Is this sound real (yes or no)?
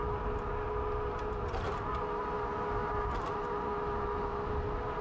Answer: yes